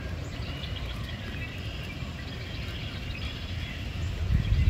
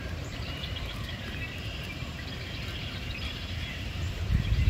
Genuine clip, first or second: first